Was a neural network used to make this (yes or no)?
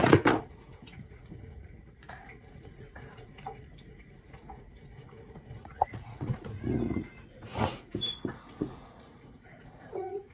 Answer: yes